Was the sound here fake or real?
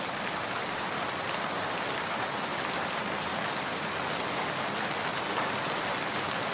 real